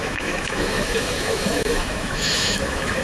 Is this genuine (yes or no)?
no